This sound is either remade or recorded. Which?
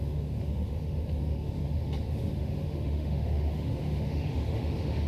remade